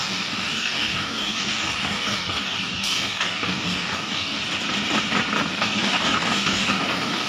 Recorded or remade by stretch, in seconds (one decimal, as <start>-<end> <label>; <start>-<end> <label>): 0.0-4.4 remade; 4.4-5.5 recorded; 5.5-7.3 remade

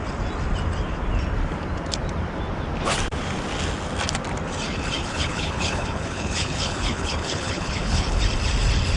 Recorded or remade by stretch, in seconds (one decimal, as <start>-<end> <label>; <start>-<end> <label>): 0.0-5.0 recorded; 5.0-8.2 remade; 8.2-9.0 recorded

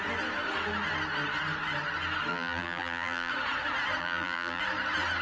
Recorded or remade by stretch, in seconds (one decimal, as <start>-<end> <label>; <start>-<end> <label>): 0.0-2.3 recorded; 2.3-3.3 remade; 3.3-4.0 recorded; 4.0-4.6 remade; 4.6-5.2 recorded